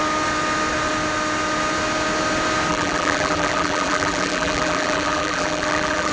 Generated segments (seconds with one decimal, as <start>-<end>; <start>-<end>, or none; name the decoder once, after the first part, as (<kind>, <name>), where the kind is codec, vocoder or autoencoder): 2.7-6.1 (vocoder, BigVGAN v2)